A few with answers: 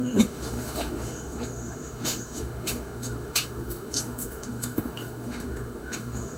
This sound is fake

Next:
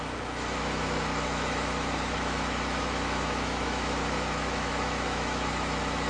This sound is fake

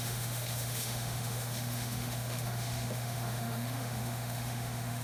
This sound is fake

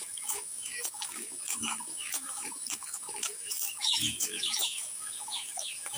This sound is fake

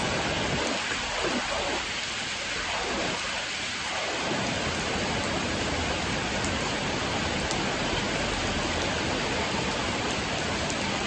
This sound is real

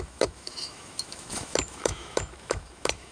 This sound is fake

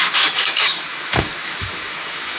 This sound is fake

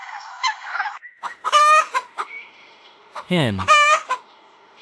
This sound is fake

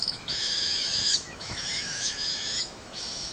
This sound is fake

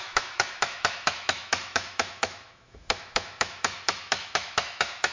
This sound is fake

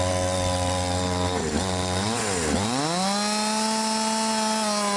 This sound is real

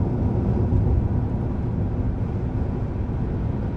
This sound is real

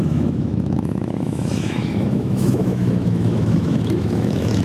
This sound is fake